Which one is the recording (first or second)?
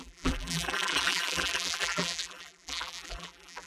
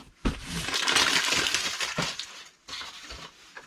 second